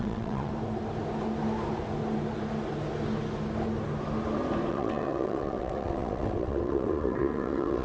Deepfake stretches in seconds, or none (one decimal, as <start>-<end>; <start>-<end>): 0.0-0.5; 4.7-7.8